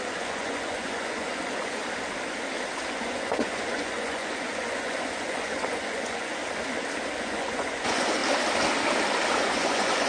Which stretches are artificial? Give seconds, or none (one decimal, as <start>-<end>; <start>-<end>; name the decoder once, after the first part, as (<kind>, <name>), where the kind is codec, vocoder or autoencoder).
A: 0.0-1.8 (vocoder, Vocos); 2.9-6.4; 7.2-8.2; 9.4-10.1